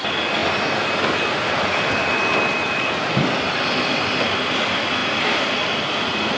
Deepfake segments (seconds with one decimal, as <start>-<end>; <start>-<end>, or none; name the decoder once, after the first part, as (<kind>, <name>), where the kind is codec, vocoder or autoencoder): 0.4-4.2 (vocoder, BigVGAN v2)